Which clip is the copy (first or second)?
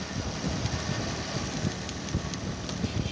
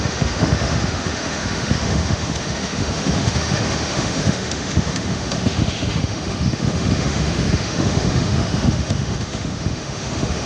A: second